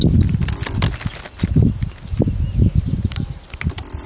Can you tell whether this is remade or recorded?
recorded